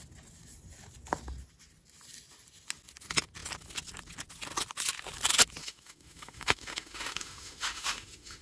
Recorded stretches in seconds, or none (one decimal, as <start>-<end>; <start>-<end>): 0.0-5.6